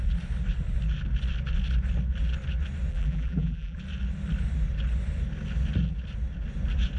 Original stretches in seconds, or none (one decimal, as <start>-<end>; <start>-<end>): 0.0-2.9; 3.8-7.0